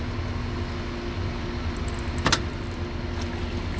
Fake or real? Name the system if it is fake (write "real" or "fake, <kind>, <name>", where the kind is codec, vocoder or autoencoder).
real